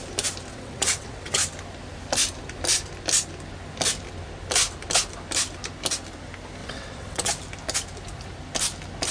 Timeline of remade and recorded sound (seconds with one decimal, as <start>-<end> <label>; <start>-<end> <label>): 0.0-0.5 recorded; 0.5-1.4 remade; 1.4-6.6 recorded; 6.6-7.3 remade; 7.3-9.1 recorded